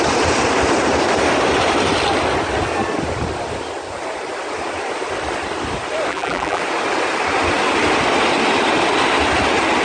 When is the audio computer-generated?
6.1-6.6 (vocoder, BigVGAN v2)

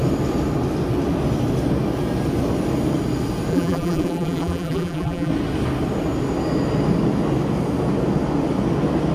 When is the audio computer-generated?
3.5-5.3 (vocoder, BigVGAN v2)

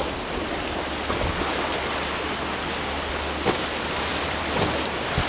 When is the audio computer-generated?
0.0-1.3 (vocoder, BigVGAN v2); 4.1-5.3

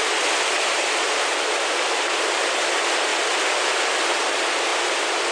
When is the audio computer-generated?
none

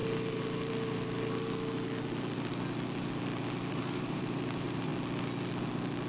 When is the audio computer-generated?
3.7-4.9 (vocoder, BigVGAN v2)

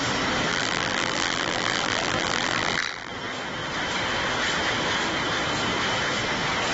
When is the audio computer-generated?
0.5-3.1 (vocoder, BigVGAN v2)

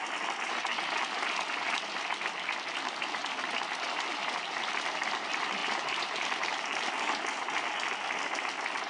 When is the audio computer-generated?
5.6-6.9 (vocoder, BigVGAN v2)

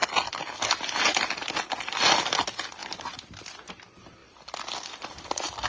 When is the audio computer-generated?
2.8-3.7 (vocoder, BigVGAN v2)